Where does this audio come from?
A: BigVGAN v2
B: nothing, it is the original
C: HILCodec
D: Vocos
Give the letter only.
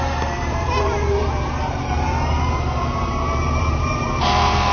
A